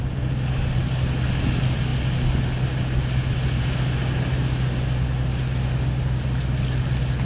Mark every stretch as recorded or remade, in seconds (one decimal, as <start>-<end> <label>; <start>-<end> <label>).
0.0-7.2 recorded